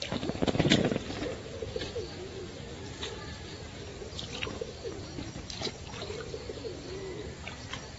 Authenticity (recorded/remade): recorded